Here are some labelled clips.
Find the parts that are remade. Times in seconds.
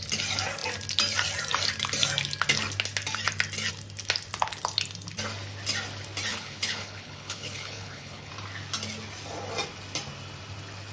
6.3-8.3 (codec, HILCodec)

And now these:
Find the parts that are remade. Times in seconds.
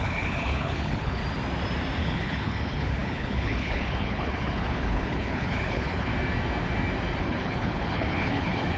0.0-1.2 (codec, HILCodec); 2.0-6.1; 7.2-8.8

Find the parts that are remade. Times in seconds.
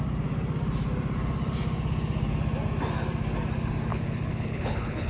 3.9-5.1 (codec, HILCodec)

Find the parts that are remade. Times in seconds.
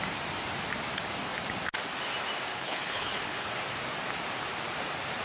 2.5-3.5 (codec, HILCodec)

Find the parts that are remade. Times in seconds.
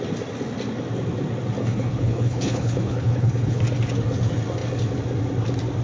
1.6-3.6 (codec, HILCodec)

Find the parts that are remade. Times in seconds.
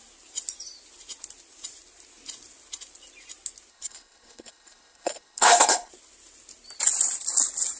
3.7-5.9 (codec, HILCodec)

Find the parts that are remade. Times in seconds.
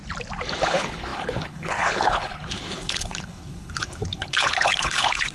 0.6-5.3 (codec, HILCodec)